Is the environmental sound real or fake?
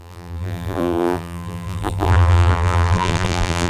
fake